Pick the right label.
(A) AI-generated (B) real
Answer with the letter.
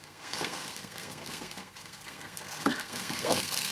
A